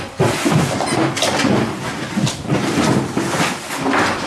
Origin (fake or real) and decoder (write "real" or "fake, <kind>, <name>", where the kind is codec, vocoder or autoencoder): real